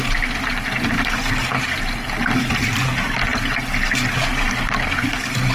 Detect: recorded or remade recorded